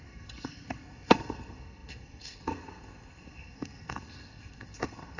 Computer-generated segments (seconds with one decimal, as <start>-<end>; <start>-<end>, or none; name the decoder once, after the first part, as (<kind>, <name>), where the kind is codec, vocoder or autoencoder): 0.0-5.2 (codec, SNAC)

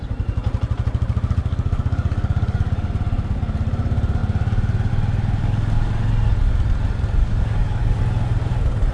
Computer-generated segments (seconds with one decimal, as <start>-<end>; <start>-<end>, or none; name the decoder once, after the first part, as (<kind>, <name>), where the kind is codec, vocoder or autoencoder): 1.4-2.9 (codec, DAC); 5.4-5.9; 7.2-8.0

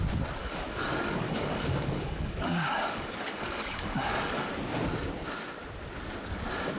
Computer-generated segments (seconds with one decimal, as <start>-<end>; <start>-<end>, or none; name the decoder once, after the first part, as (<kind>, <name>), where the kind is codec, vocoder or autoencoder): 0.4-4.5 (codec, DAC)

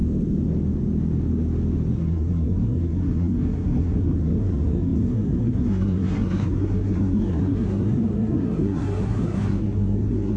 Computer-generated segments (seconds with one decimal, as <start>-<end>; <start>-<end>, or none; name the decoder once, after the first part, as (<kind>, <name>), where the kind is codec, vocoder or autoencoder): 1.9-10.4 (codec, SNAC)